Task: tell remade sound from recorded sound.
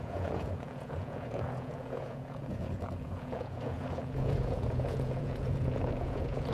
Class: remade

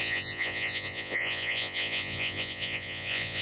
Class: remade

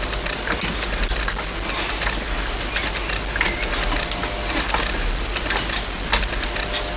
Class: recorded